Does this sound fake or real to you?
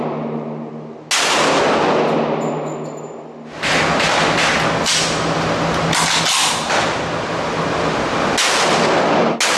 real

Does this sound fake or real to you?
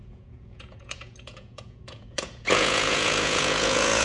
fake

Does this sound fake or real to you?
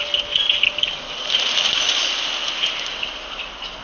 real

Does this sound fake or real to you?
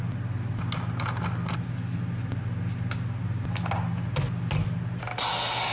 real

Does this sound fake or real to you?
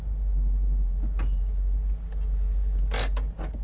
real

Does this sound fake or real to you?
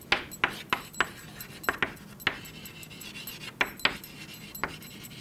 real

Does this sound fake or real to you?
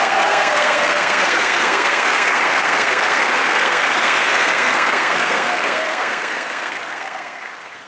fake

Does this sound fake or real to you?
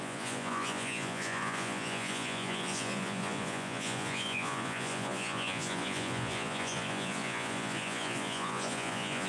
fake